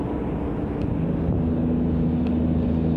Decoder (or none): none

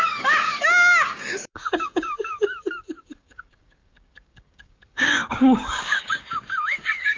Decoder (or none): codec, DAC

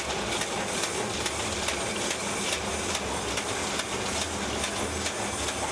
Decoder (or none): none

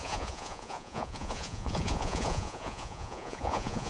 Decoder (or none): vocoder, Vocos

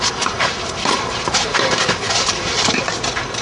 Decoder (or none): vocoder, BigVGAN v2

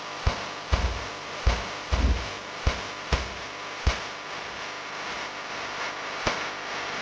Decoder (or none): none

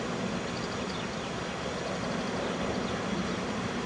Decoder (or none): none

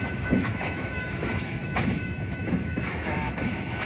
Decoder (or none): autoencoder, DAC-VAE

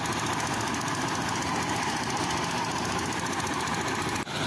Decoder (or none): vocoder, BigVGAN v2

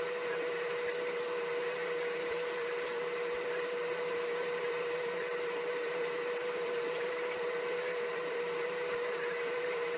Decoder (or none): vocoder, BigVGAN v2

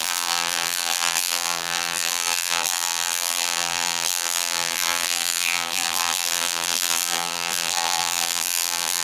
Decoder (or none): vocoder, BigVGAN v2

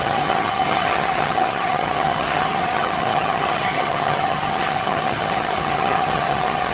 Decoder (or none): vocoder, HiFi-GAN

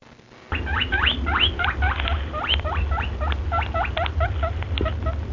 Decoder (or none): none